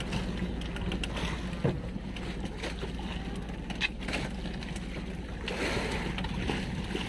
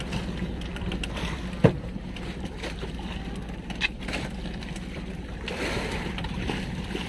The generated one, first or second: second